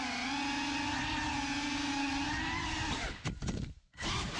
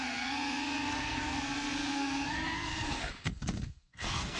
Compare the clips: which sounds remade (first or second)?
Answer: second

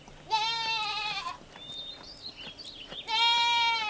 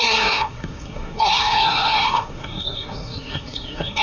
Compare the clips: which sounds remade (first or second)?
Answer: second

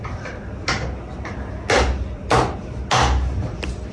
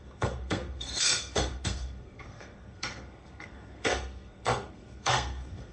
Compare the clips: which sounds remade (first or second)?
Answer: second